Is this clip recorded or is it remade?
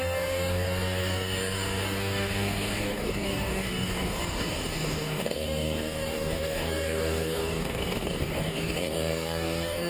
remade